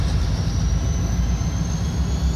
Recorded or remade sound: recorded